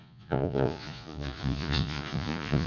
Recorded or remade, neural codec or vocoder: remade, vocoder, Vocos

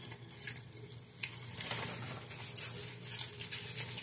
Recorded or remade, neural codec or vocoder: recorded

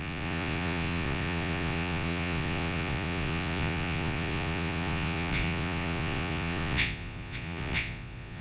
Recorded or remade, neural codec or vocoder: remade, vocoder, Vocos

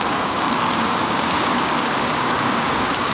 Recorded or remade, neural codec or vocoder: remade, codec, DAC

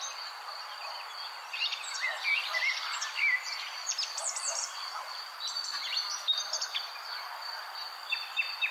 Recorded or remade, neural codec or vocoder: remade, vocoder, BigVGAN v2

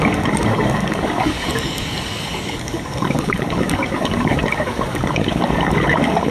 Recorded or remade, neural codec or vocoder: remade, codec, DAC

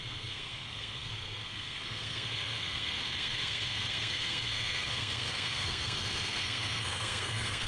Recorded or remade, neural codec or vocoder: remade, codec, SNAC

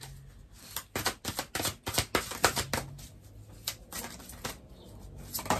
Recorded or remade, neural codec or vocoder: recorded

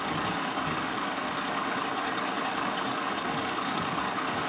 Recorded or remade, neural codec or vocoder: remade, codec, DAC